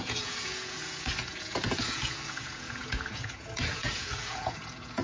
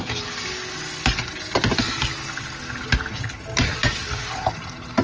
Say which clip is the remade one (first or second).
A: first